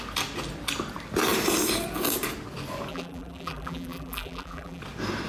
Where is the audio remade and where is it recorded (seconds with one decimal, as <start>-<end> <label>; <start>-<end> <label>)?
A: 0.0-2.9 recorded; 2.9-4.8 remade; 4.8-5.3 recorded